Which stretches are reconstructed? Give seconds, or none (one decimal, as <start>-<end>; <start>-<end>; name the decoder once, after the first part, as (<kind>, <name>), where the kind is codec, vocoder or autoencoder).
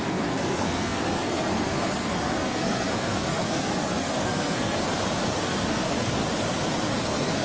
0.0-4.8 (codec, SNAC); 5.4-6.2; 7.0-7.4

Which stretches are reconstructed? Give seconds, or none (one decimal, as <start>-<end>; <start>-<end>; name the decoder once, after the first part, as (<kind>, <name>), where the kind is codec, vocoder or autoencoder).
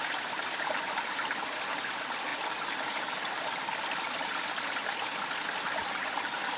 none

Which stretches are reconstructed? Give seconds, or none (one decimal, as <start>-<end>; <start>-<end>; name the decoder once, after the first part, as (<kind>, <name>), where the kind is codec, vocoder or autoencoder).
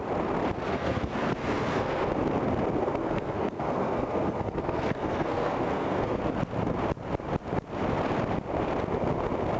0.7-2.1 (codec, SNAC); 2.8-6.2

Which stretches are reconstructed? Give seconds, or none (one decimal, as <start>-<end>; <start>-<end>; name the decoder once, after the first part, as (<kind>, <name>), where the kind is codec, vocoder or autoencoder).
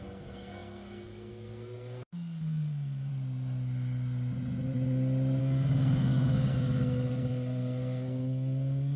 0.0-3.1 (codec, SNAC); 5.4-9.0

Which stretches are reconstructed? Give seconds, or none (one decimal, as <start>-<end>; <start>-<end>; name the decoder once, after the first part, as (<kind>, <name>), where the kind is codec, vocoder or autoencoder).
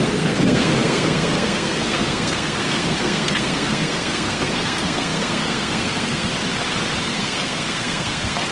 0.0-6.3 (codec, SNAC); 7.0-8.5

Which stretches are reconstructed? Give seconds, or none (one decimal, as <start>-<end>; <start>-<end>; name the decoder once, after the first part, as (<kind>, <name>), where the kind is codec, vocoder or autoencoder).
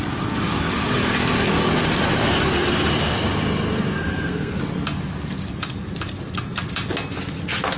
4.0-4.6 (codec, SNAC)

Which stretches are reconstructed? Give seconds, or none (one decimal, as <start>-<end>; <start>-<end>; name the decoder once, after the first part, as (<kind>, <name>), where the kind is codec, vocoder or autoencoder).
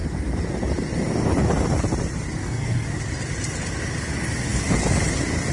2.4-3.0 (codec, SNAC)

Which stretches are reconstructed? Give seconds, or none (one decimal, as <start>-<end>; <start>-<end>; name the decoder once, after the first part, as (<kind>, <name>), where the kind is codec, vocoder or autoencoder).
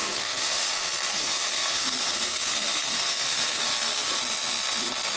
0.0-0.7 (codec, SNAC); 1.1-4.2